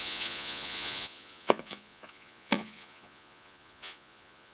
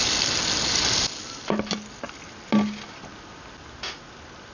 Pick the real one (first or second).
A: second